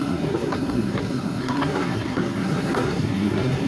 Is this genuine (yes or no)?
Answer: no